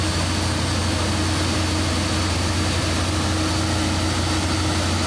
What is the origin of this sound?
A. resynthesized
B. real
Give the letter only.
B